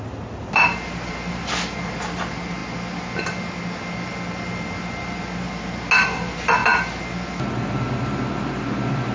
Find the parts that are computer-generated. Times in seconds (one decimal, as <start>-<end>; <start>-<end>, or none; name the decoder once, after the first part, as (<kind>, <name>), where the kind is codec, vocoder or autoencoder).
none